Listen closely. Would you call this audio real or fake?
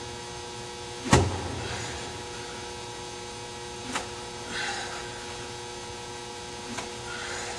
real